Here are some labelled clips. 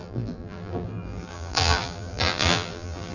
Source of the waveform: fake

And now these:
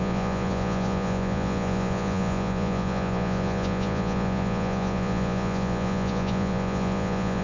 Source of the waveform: fake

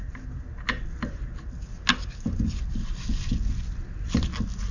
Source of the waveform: real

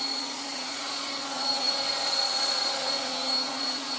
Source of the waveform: fake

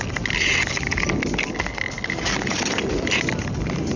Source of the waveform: real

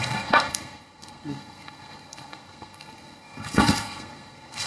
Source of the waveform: fake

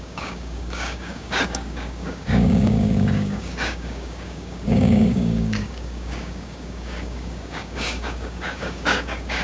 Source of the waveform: fake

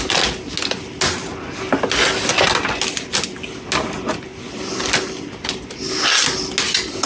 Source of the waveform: real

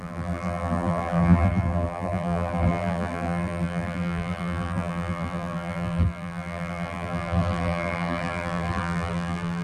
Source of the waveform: fake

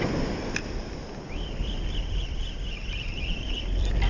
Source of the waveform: fake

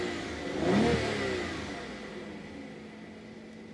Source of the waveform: real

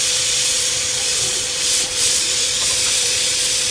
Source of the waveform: fake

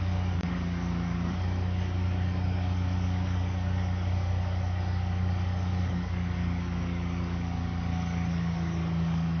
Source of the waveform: fake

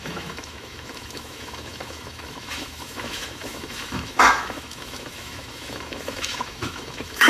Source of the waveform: fake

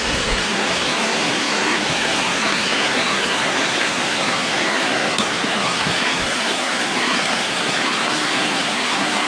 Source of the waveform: fake